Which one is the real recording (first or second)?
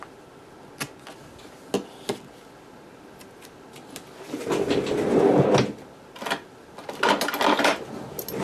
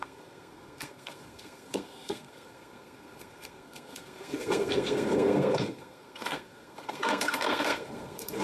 first